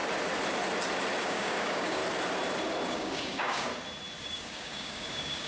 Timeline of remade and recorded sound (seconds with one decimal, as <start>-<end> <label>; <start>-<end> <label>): 0.0-1.2 recorded; 1.2-2.0 remade; 2.0-2.9 recorded; 2.9-3.7 remade; 3.7-4.2 recorded; 4.2-5.5 remade